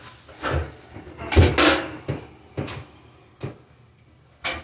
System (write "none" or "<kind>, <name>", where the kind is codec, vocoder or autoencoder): none